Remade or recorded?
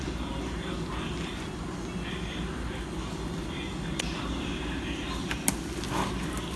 recorded